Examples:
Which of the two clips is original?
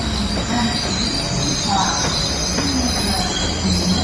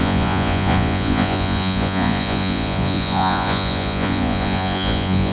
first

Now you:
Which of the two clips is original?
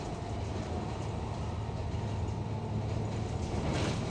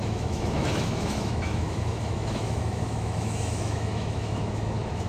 first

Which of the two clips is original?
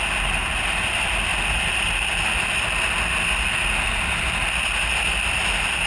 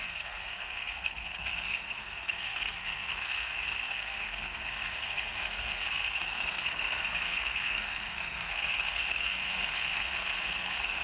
first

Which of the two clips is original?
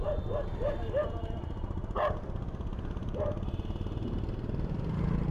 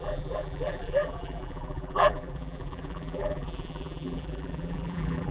first